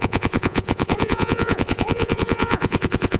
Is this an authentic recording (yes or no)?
no